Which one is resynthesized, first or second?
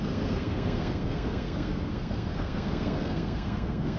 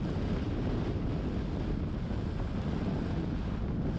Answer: first